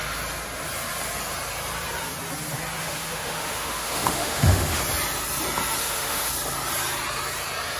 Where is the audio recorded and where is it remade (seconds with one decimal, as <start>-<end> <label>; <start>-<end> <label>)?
0.0-2.8 recorded; 2.8-4.8 remade; 4.8-5.8 recorded; 5.8-6.3 remade; 6.3-7.8 recorded